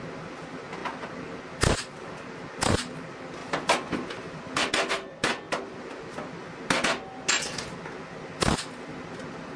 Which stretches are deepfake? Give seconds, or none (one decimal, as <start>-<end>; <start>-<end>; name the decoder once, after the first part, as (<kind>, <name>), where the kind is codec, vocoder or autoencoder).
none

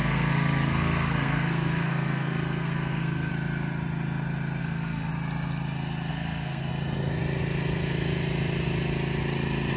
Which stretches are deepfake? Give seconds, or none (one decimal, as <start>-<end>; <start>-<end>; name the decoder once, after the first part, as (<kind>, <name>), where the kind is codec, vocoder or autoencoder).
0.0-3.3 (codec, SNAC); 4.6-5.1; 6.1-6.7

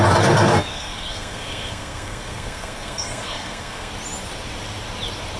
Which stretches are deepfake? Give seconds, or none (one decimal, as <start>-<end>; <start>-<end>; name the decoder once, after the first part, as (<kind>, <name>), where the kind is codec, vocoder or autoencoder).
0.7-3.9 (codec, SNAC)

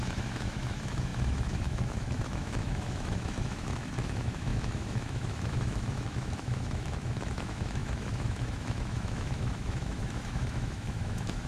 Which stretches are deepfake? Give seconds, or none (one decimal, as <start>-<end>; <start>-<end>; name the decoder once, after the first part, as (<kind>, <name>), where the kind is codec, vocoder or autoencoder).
0.0-11.5 (autoencoder, DAC-VAE)